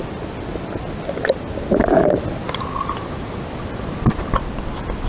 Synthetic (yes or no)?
no